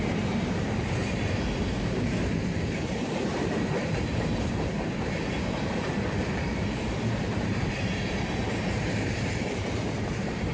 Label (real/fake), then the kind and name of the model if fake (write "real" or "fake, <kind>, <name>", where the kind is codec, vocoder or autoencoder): fake, vocoder, BigVGAN v2